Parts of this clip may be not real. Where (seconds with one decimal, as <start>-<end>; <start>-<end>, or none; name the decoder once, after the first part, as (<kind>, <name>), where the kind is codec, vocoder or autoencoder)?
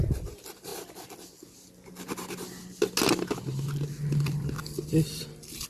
0.0-0.7 (vocoder, BigVGAN v2); 4.1-5.7